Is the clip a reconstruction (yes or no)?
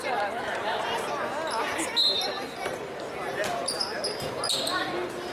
no